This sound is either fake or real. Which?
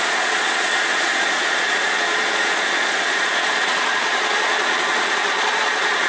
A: fake